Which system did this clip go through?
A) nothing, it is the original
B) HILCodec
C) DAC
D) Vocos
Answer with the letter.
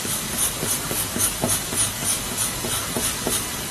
C